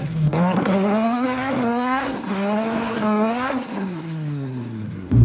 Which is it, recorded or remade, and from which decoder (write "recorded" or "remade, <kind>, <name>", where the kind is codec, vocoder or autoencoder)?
remade, codec, SNAC